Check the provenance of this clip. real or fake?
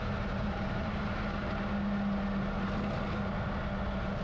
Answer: real